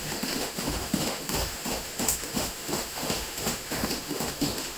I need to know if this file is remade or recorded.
remade